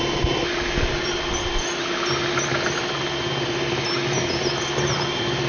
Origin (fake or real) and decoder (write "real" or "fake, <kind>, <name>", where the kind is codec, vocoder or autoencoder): real